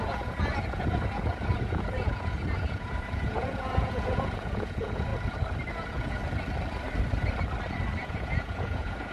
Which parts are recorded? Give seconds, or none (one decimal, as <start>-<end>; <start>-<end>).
5.1-5.7; 6.2-8.0